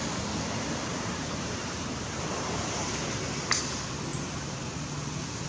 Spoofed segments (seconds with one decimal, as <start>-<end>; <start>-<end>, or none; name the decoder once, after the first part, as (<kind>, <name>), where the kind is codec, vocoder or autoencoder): 0.9-2.9 (vocoder, BigVGAN v2); 4.1-4.9